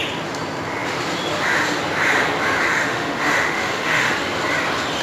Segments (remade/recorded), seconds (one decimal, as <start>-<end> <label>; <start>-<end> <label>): 0.0-2.6 recorded; 2.6-4.1 remade; 4.1-5.0 recorded